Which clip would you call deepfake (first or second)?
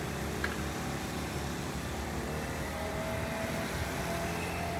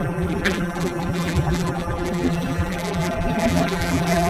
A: second